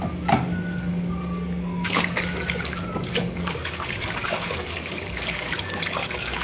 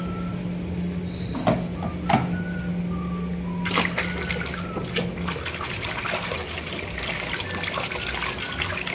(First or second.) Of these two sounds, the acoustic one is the second